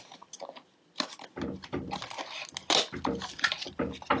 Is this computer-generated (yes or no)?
no